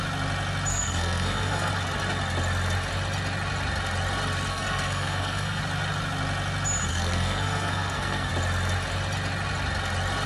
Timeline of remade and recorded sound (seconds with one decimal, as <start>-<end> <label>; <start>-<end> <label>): 0.0-0.7 recorded; 0.7-1.7 remade; 1.7-4.5 recorded; 4.5-5.6 remade; 5.6-6.9 recorded; 6.9-8.3 remade; 8.3-10.3 recorded